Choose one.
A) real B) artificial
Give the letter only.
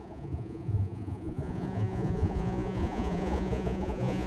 B